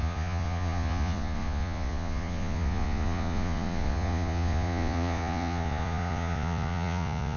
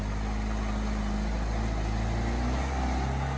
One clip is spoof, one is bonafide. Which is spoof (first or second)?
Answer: first